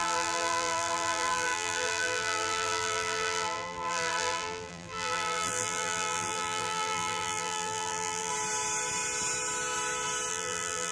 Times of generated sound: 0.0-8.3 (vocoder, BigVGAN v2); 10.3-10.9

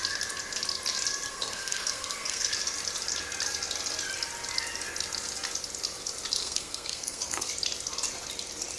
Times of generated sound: 1.3-2.5 (codec, SNAC); 6.4-7.5

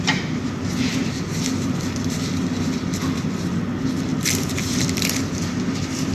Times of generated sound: none

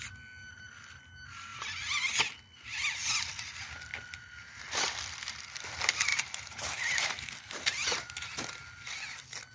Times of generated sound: 1.5-2.1 (vocoder, BigVGAN v2); 6.1-8.0

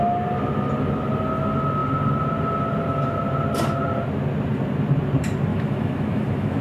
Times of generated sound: 5.5-6.6 (autoencoder, DAC-VAE)

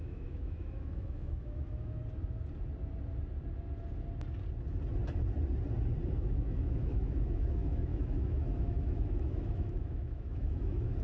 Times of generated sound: 0.0-2.0 (autoencoder, DAC-VAE); 6.1-11.0

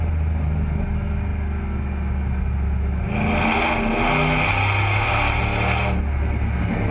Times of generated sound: none